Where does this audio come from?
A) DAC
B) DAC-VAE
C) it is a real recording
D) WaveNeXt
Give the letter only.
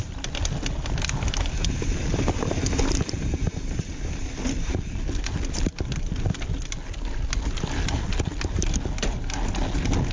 C